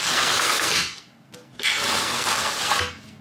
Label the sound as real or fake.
fake